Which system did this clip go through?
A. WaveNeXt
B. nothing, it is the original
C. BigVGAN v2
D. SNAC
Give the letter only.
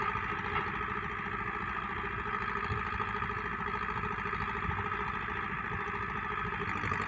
B